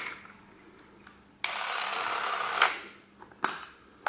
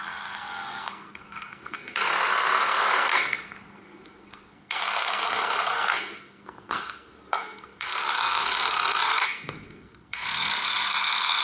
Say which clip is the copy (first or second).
second